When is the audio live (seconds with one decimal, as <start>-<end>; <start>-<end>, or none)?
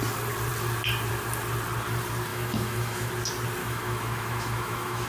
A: 0.0-2.3; 3.1-3.6